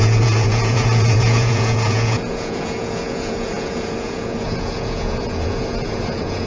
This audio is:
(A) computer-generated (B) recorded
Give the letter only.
A